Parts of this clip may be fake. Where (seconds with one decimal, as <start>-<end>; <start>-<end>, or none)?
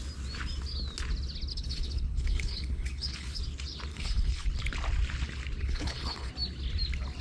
1.5-3.4; 3.9-4.5; 5.6-6.3